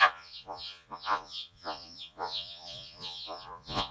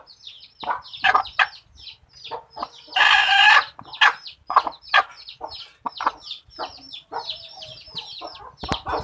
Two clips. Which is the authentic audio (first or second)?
second